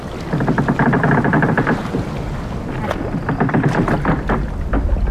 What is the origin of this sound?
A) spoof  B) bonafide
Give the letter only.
B